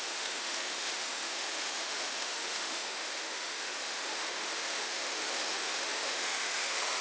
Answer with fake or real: fake